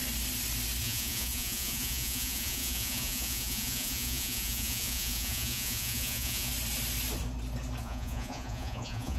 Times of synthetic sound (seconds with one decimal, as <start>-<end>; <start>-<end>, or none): 0.8-6.5; 7.8-9.2

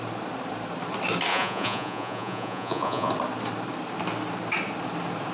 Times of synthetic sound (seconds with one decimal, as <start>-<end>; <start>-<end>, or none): 1.3-3.1

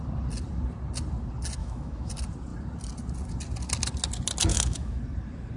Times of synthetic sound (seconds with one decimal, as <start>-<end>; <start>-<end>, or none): 1.6-2.1; 4.5-5.0

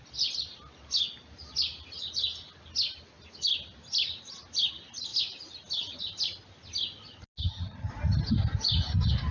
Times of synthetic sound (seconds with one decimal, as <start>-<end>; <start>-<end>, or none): 7.4-7.9

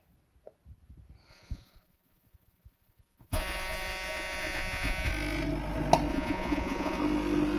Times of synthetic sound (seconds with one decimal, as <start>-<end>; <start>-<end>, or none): 1.3-5.1; 6.1-7.0

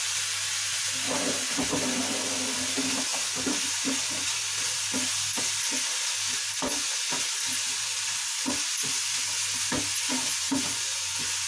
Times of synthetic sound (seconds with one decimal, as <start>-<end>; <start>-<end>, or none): 10.4-11.5

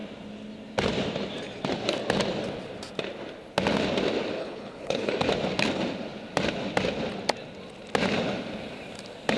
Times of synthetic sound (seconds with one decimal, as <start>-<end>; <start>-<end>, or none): 4.4-5.1

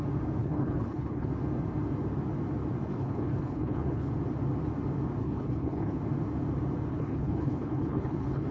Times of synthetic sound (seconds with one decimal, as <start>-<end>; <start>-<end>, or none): 0.4-1.3; 2.9-4.1; 5.2-6.0; 6.9-8.5